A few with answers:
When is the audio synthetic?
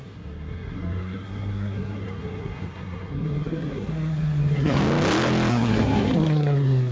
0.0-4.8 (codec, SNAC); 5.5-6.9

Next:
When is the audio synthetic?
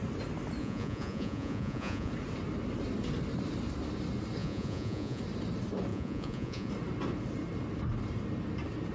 0.6-2.1 (vocoder, Vocos); 4.4-5.2; 5.9-6.7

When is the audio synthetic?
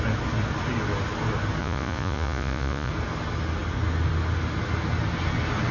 1.6-2.9 (vocoder, Vocos)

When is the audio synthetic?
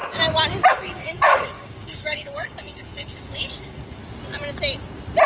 0.7-4.0 (codec, DAC)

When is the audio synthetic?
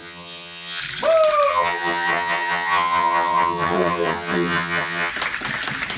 0.0-0.8 (vocoder, HiFi-GAN); 1.5-5.1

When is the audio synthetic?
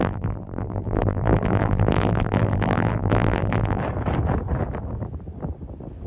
0.0-3.8 (vocoder, BigVGAN v2)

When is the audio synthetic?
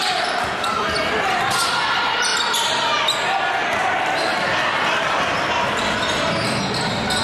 none